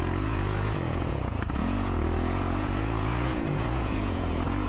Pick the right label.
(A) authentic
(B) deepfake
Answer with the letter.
B